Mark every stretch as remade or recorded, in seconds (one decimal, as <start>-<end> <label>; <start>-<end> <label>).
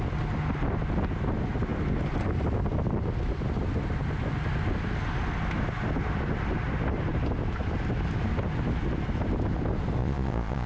0.0-10.0 recorded; 10.0-10.7 remade